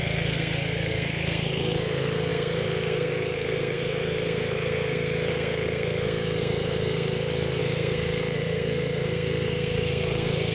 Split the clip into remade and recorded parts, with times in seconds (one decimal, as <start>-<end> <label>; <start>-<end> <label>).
0.0-10.5 remade

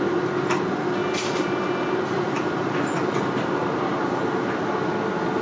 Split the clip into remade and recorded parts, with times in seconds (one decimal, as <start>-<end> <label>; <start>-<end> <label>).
0.0-1.0 recorded; 1.0-4.2 remade; 4.2-5.4 recorded